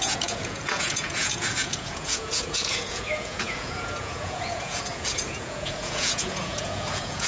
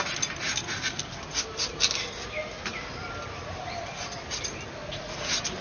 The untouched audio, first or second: second